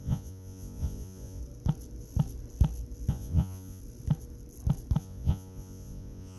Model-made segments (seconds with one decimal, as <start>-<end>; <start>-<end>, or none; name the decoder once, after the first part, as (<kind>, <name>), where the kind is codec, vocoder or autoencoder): 0.0-1.4 (vocoder, Vocos); 3.1-3.8; 5.0-6.4